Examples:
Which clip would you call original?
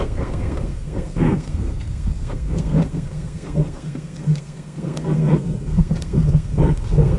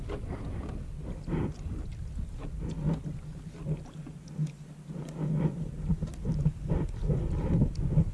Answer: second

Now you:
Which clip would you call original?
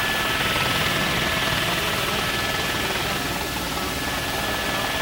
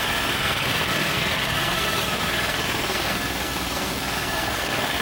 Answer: first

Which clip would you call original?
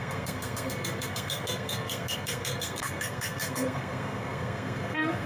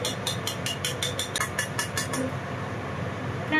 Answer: second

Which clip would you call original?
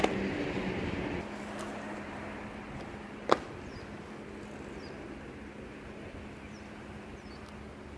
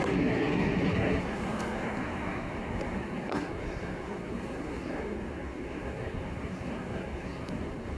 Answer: first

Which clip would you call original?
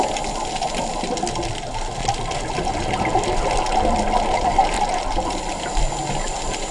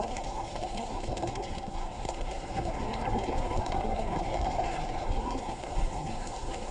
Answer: first